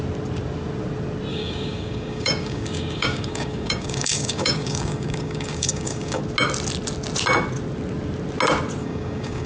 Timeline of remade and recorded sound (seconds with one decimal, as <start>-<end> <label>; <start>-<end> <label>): 0.0-1.3 recorded; 1.3-6.2 remade; 6.2-8.8 recorded; 8.8-9.5 remade